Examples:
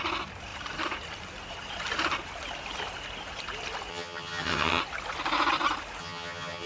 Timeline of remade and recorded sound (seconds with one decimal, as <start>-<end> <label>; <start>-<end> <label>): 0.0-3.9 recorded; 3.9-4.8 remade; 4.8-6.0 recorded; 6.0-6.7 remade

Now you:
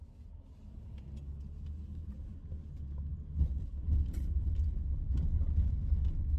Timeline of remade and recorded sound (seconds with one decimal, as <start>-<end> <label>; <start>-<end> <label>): 0.0-6.4 recorded

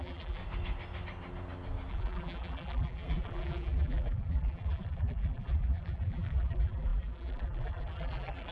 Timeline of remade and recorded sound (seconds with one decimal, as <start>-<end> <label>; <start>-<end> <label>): 0.0-0.4 remade; 0.4-1.9 recorded; 1.9-8.5 remade

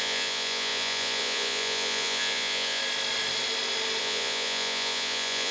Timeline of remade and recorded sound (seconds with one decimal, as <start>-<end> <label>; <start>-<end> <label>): 0.0-2.8 remade; 2.8-4.0 recorded; 4.0-5.5 remade

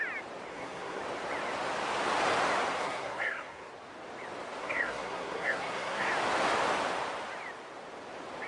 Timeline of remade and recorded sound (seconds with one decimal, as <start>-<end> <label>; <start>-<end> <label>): 0.0-0.5 recorded; 0.5-1.0 remade; 1.0-2.8 recorded; 2.8-3.7 remade; 3.7-4.6 recorded; 4.6-6.1 remade; 6.1-8.5 recorded

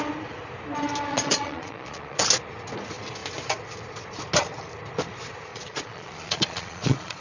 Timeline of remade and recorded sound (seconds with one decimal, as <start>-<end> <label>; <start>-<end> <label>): 0.0-1.1 recorded; 1.1-2.2 remade; 2.2-5.5 recorded; 5.5-7.2 remade

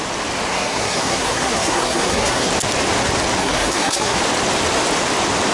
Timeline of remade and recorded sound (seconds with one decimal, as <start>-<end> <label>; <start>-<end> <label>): 0.0-0.5 recorded; 0.5-2.5 remade; 2.5-3.4 recorded; 3.4-4.2 remade; 4.2-5.5 recorded